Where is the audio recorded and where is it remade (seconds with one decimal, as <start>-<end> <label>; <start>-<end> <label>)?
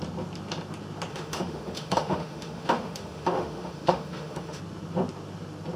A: 0.0-1.1 recorded; 1.1-4.6 remade; 4.6-5.8 recorded